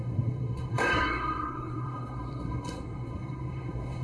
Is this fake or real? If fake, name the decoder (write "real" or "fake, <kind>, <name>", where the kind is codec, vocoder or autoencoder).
fake, codec, SNAC